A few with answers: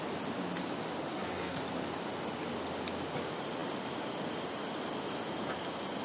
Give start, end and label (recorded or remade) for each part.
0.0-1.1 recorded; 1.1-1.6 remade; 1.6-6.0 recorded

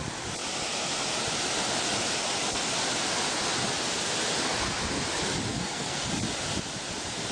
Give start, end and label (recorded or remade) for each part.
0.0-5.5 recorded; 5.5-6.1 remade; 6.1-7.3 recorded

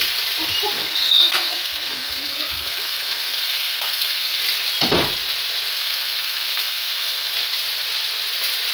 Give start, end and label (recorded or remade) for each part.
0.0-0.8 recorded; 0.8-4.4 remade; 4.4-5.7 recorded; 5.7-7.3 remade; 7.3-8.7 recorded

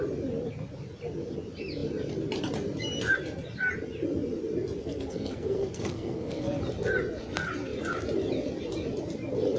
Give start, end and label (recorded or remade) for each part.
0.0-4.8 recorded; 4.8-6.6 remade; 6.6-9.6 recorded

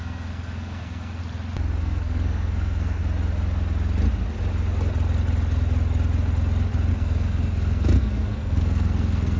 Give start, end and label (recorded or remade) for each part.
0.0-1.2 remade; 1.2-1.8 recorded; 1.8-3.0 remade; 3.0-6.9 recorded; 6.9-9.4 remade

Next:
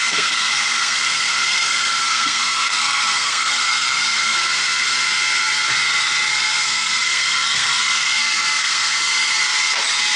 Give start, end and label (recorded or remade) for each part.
0.0-4.6 remade; 4.6-6.3 recorded; 6.3-9.4 remade; 9.4-10.2 recorded